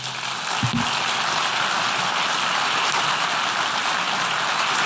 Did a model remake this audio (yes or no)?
no